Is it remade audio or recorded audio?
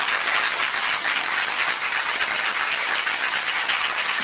remade